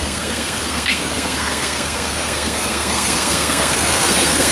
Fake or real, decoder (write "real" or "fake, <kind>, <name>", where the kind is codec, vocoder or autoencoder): fake, codec, SNAC